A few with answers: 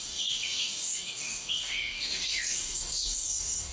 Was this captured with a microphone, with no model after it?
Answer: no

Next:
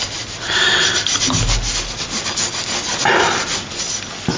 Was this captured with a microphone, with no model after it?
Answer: yes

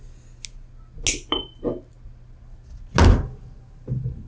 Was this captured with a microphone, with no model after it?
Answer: yes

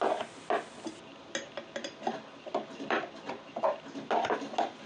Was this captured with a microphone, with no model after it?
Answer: yes